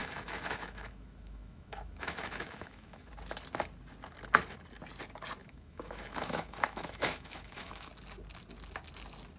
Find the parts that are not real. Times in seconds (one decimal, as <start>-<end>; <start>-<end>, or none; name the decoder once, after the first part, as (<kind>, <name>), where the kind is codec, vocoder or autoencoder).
0.0-3.1 (autoencoder, DAC-VAE); 5.4-7.9

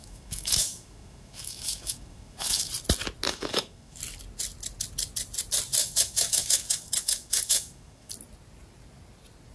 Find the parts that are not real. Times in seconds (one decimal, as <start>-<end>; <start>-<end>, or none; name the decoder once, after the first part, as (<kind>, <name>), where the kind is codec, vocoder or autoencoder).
0.0-2.7 (autoencoder, DAC-VAE); 3.3-4.0; 5.8-8.1

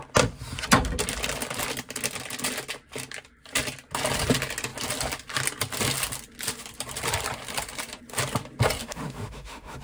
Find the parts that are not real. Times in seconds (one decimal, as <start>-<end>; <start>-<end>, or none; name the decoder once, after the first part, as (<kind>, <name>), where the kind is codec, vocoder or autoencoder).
8.8-9.8 (autoencoder, DAC-VAE)

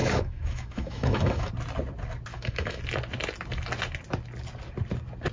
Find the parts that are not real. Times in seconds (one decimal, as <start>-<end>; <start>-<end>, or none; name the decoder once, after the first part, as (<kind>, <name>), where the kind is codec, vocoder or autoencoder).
0.0-1.5 (autoencoder, DAC-VAE); 2.3-2.8

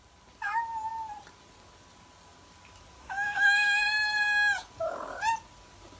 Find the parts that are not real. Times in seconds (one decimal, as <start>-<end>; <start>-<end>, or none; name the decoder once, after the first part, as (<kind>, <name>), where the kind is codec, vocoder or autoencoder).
3.0-3.8 (autoencoder, DAC-VAE)

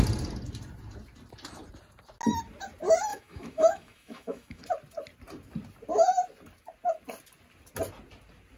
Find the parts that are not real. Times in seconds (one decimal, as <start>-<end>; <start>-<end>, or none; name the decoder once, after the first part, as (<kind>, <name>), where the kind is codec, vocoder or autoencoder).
3.1-4.6 (autoencoder, DAC-VAE)

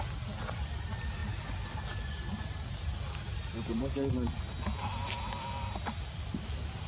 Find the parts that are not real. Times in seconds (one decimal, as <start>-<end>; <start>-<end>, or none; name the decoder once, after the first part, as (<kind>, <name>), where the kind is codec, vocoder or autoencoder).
none

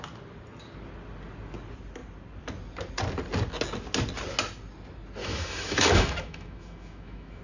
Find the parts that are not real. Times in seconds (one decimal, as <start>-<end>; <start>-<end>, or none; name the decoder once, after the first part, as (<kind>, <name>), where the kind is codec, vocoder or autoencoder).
5.2-7.4 (autoencoder, DAC-VAE)